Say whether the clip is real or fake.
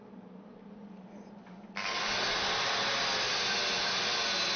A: real